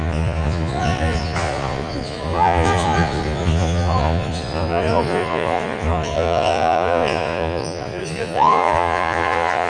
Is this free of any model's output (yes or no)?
no